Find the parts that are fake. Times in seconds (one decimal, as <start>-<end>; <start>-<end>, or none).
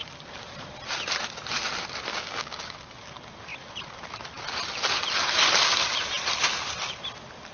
2.1-2.9